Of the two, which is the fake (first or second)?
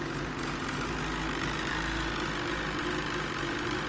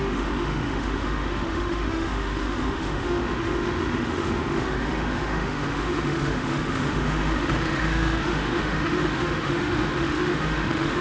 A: second